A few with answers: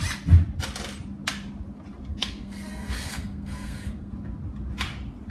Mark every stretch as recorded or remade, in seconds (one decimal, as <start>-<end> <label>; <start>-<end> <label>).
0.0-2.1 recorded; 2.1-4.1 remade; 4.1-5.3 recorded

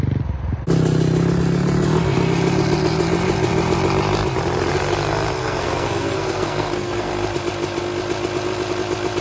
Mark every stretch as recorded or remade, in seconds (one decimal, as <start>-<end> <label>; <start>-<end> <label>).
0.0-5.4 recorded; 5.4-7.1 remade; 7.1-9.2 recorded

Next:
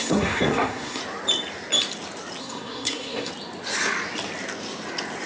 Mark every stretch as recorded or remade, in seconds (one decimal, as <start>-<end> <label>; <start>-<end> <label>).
0.0-1.0 remade; 1.0-2.4 recorded; 2.4-3.3 remade; 3.3-5.3 recorded